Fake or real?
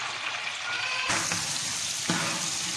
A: fake